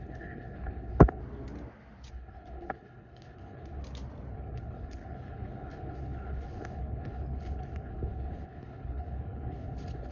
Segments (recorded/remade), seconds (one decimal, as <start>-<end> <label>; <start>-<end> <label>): 0.0-1.2 remade; 1.2-2.1 recorded; 2.1-3.8 remade; 3.8-4.3 recorded; 4.3-10.1 remade